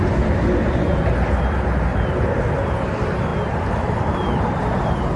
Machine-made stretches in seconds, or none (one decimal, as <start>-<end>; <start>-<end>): none